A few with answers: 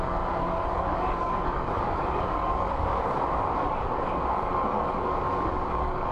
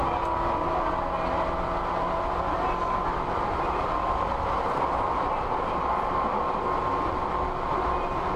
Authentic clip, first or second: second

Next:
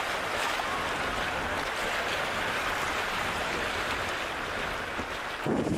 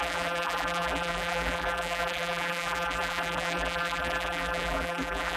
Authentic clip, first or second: first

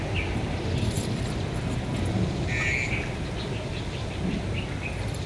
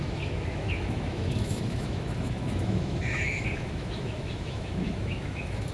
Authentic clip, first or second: first